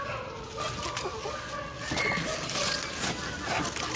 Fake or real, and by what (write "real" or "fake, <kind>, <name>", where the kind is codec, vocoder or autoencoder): real